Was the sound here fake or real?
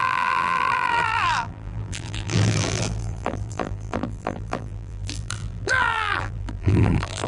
fake